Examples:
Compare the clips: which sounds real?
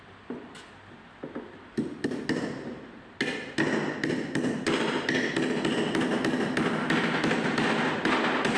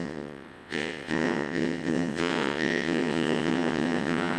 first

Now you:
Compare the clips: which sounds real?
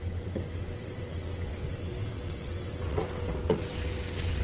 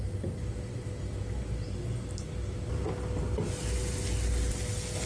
second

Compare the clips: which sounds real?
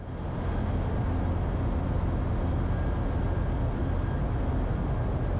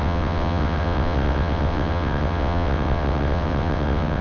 first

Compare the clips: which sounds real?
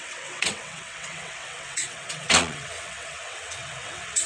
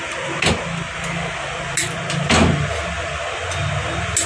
second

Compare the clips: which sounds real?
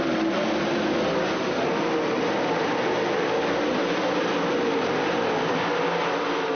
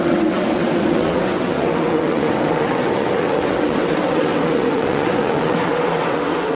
first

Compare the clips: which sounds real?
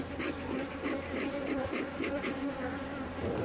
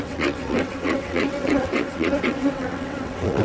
first